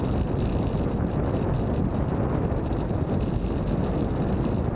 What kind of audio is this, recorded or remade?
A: recorded